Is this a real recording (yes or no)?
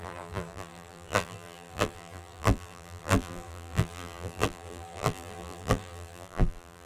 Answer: no